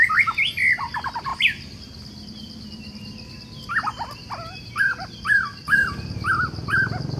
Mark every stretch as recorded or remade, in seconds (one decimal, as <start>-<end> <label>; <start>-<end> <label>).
0.0-7.2 recorded